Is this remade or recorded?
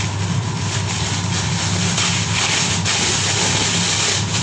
recorded